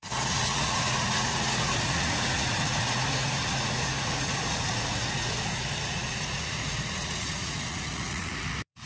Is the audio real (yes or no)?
no